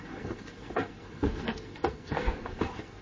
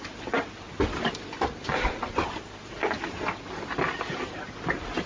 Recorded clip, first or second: second